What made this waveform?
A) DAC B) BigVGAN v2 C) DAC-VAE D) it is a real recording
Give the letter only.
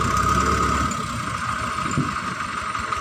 D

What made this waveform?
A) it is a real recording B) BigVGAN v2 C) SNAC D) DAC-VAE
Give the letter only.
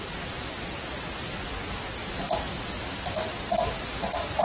A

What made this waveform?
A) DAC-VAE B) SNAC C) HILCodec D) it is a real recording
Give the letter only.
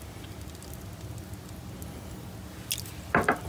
D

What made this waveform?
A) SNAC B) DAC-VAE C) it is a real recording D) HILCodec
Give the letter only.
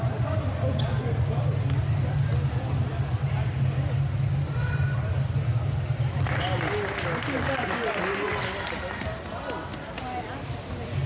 C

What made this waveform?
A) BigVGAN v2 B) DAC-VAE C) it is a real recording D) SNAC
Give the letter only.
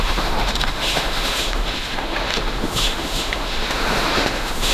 B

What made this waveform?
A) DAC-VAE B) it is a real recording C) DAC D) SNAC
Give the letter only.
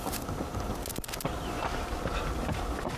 B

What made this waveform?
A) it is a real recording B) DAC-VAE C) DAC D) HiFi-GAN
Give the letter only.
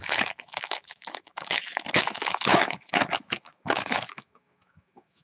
B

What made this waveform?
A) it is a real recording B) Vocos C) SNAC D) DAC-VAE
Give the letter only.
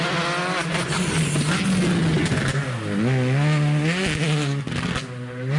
A